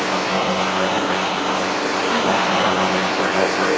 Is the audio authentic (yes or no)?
no